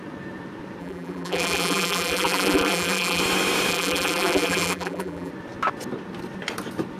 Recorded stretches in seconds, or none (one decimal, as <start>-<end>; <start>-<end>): 0.0-0.8; 3.2-3.7; 5.3-7.0